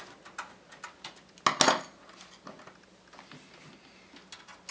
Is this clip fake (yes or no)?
no